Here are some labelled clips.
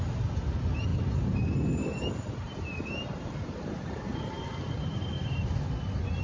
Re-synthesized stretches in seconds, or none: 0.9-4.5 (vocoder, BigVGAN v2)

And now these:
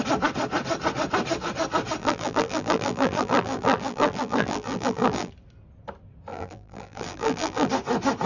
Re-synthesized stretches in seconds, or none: 2.0-5.3 (vocoder, BigVGAN v2); 6.3-7.7

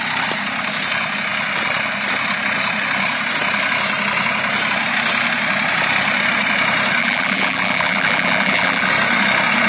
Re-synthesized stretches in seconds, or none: 7.0-8.9 (vocoder, BigVGAN v2)

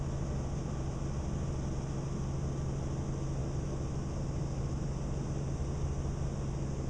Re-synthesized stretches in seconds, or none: none

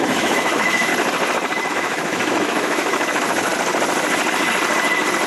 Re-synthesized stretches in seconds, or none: 0.0-0.9 (autoencoder, DAC-VAE); 1.7-3.5

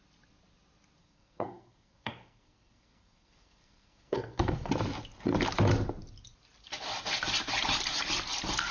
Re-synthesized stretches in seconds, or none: 1.0-4.7 (codec, SNAC)

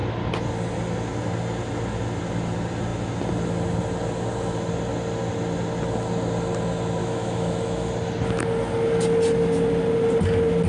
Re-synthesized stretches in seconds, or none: 7.0-7.9 (autoencoder, DAC-VAE)

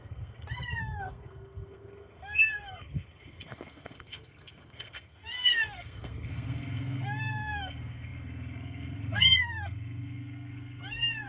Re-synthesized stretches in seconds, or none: 0.0-11.3 (codec, SNAC)